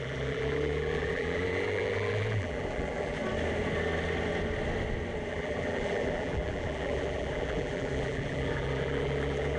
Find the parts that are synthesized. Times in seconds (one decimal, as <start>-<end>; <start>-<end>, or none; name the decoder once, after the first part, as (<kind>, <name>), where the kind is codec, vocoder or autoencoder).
0.0-3.2 (vocoder, BigVGAN v2); 5.3-9.6